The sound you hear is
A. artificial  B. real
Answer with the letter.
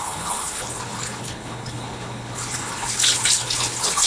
A